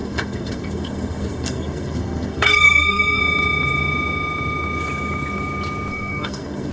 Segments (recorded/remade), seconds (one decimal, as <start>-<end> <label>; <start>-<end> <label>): 0.0-3.2 remade; 3.2-5.9 recorded; 5.9-6.7 remade